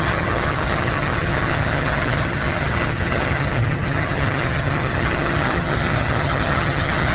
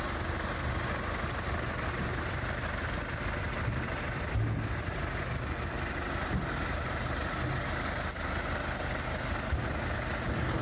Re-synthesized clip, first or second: first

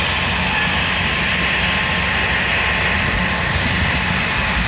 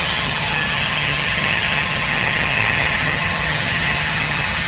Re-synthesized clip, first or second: second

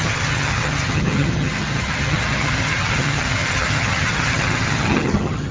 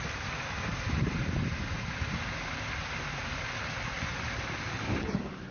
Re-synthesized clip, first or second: first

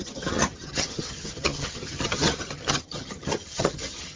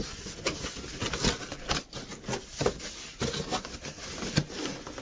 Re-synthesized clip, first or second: first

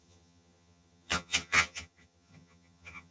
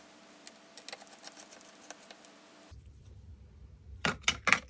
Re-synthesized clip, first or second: first